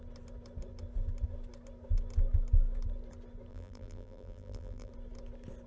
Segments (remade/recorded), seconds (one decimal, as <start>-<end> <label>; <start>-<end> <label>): 0.0-3.5 recorded; 3.5-4.9 remade; 4.9-5.7 recorded